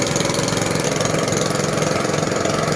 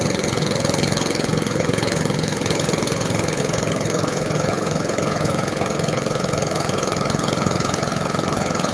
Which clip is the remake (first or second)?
second